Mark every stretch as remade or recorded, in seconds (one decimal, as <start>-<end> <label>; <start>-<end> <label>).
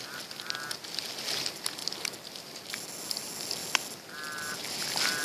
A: 0.0-5.2 recorded